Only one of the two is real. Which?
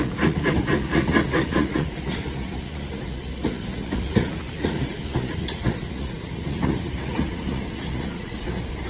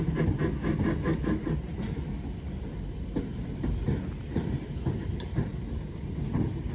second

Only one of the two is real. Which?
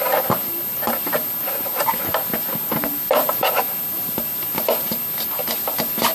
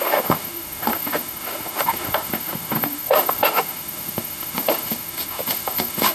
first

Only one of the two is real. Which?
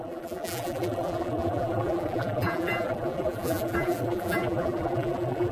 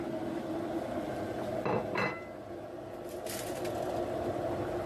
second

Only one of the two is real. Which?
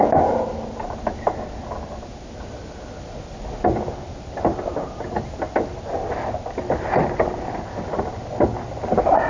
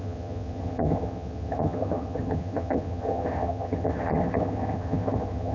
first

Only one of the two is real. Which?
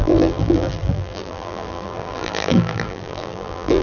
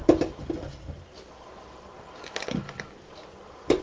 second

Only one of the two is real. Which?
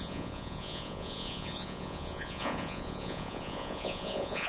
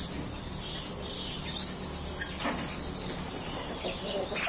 second